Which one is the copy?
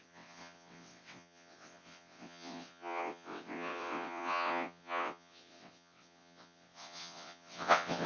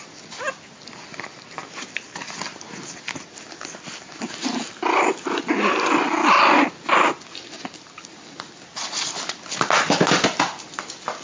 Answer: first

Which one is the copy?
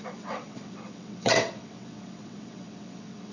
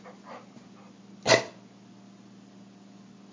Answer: first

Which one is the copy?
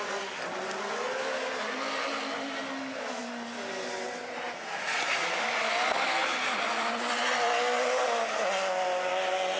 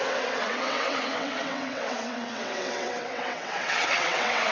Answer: second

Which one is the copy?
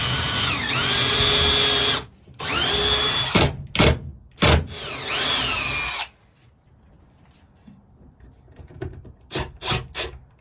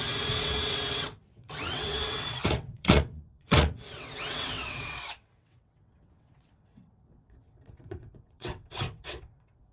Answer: second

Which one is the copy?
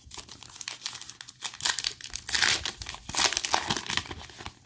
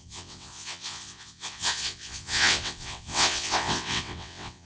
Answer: second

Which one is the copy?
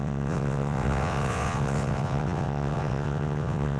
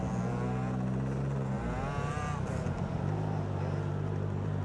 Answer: first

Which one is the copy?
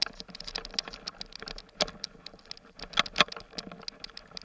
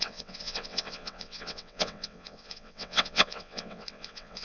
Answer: second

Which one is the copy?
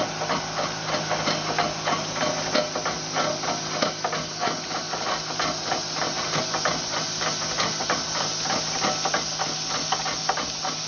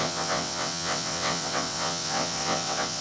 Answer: second